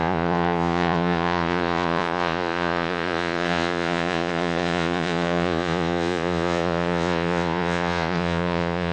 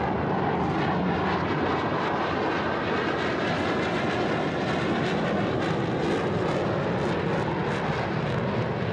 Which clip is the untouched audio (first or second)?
second